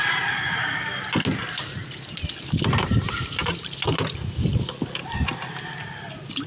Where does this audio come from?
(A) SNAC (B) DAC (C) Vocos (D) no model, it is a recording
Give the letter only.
D